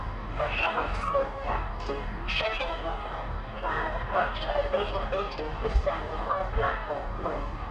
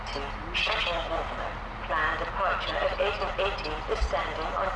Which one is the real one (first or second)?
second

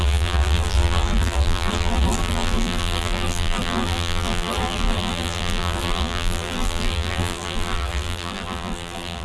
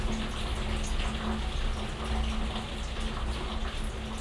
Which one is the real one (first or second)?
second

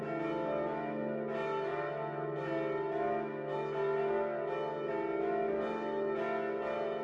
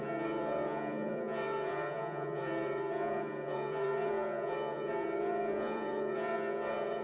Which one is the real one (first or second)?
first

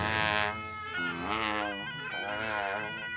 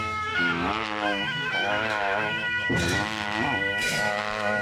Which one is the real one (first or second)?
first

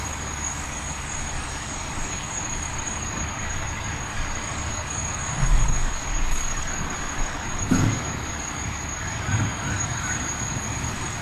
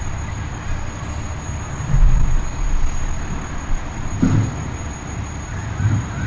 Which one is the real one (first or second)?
second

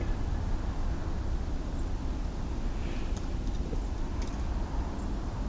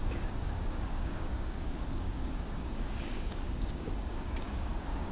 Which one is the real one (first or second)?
first